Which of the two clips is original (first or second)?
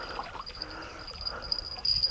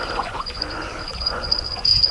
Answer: first